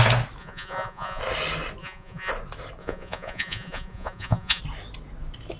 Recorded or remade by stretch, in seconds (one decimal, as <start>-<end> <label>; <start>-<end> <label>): 0.0-0.4 recorded; 0.4-1.2 remade; 1.2-1.8 recorded; 1.8-2.3 remade; 2.3-2.8 recorded; 2.8-4.6 remade; 4.6-5.6 recorded